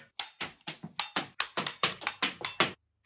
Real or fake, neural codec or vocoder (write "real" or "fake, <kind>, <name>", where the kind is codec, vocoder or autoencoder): real